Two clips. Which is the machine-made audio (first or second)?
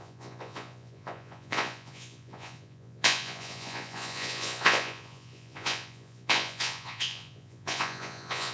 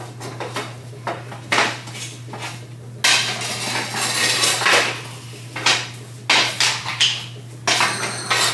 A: first